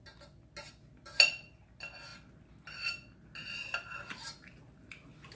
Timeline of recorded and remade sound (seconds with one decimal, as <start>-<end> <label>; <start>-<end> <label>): 0.0-5.4 recorded